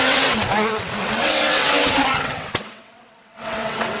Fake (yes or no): yes